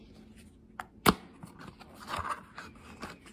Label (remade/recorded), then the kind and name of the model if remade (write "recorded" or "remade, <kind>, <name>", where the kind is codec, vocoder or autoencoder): recorded